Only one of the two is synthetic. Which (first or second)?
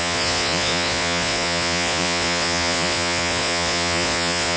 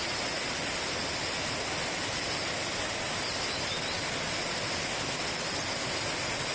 first